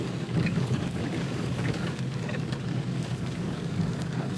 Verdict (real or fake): fake